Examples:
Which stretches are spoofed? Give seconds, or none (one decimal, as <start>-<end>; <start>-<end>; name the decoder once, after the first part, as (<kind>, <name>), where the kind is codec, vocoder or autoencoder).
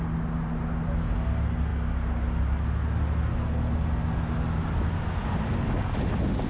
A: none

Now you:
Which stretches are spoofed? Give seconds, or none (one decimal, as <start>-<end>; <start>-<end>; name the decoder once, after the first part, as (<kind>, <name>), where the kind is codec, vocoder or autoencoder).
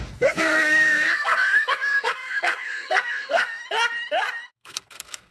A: 0.0-3.6 (codec, SNAC); 4.5-5.3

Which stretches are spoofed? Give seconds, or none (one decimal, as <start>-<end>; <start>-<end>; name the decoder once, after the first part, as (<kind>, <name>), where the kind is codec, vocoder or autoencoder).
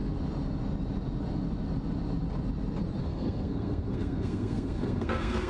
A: 3.0-5.5 (codec, SNAC)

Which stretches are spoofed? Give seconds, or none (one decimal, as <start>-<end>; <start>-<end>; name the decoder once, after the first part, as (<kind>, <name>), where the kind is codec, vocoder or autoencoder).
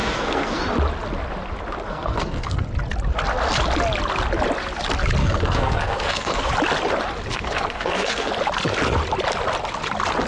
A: 0.0-0.6 (codec, SNAC); 1.9-2.6; 5.2-6.5; 7.3-8.3